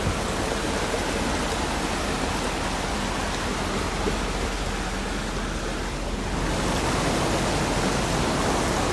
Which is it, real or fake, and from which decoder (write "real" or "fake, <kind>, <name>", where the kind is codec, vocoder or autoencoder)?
real